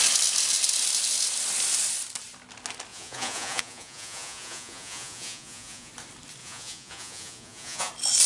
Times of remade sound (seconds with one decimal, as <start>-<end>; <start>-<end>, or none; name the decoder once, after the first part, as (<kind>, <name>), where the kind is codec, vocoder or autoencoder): 2.9-5.9 (vocoder, Vocos); 6.4-7.9